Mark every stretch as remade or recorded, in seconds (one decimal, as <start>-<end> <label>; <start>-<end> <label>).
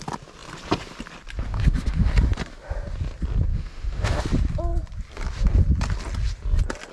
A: 0.0-1.5 recorded; 1.5-2.1 remade; 2.1-3.5 recorded; 3.5-4.2 remade; 4.2-6.9 recorded